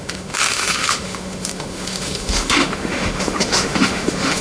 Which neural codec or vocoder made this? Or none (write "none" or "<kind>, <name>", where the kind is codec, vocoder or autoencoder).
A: autoencoder, DAC-VAE